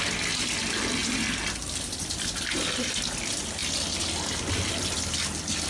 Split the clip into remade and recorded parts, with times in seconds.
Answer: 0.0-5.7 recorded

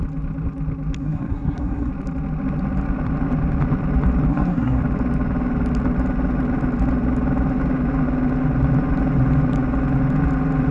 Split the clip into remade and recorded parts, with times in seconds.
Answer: 0.0-1.0 recorded; 1.0-1.9 remade; 1.9-4.3 recorded; 4.3-4.8 remade; 4.8-10.7 recorded

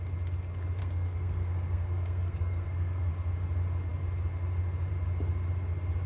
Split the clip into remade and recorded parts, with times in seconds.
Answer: 0.0-0.8 recorded; 0.8-3.1 remade; 3.1-6.1 recorded

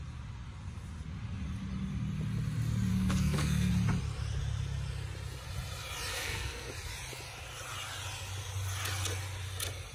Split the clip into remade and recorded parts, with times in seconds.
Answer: 0.0-2.9 recorded; 2.9-3.7 remade; 3.7-6.1 recorded; 6.1-6.7 remade; 6.7-9.9 recorded

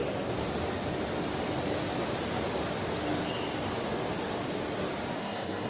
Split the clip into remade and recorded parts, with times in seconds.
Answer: 0.0-5.2 recorded; 5.2-5.7 remade

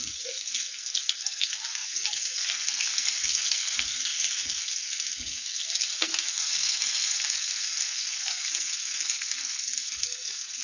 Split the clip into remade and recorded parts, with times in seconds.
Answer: 0.0-10.6 remade